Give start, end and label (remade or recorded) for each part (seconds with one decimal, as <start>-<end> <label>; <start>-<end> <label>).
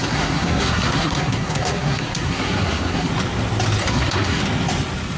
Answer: 0.0-3.1 remade; 3.1-3.8 recorded; 3.8-4.4 remade; 4.4-5.2 recorded